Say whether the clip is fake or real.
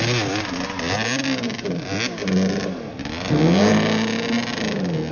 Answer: real